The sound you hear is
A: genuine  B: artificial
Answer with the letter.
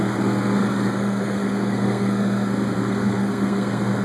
B